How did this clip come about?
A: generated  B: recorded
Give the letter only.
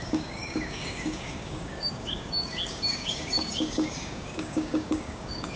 A